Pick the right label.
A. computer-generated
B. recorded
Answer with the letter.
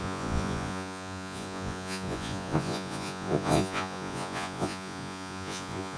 A